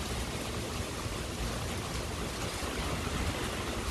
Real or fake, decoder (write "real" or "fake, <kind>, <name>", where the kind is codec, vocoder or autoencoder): real